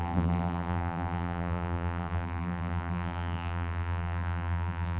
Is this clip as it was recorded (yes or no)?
no